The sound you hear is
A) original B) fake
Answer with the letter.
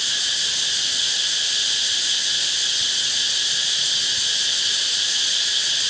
A